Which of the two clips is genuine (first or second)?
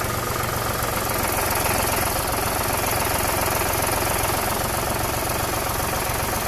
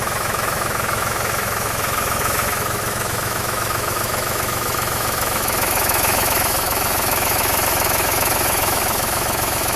first